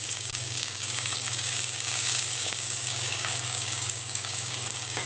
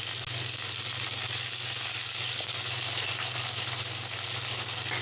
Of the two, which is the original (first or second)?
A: second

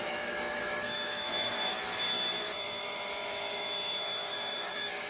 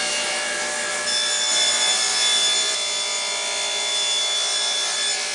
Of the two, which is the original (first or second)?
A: second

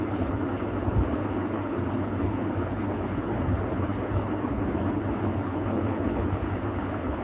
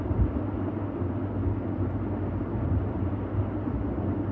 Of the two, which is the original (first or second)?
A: second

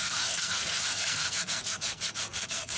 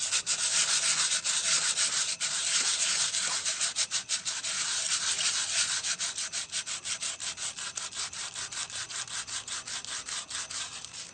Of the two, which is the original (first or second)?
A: second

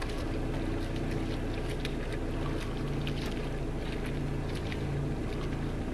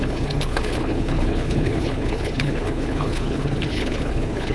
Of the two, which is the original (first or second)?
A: first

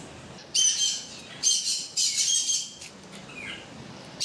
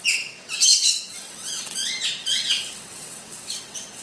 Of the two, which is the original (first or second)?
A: first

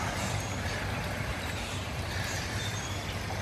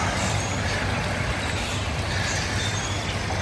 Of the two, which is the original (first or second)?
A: second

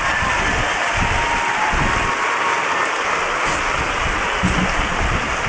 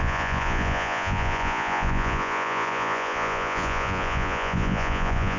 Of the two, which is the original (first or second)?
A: first